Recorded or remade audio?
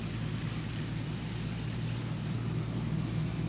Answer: recorded